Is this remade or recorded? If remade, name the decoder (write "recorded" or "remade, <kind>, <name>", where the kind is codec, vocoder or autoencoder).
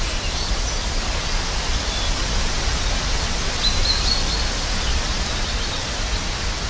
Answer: recorded